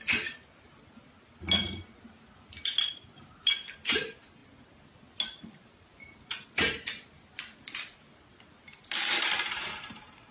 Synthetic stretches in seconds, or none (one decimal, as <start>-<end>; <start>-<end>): none